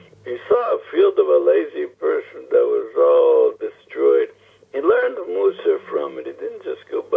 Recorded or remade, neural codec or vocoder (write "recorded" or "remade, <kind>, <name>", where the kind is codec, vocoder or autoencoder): recorded